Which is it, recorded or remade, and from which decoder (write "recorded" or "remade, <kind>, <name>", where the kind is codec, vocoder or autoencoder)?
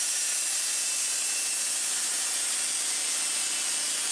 recorded